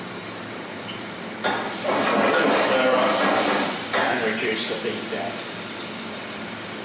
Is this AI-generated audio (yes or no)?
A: yes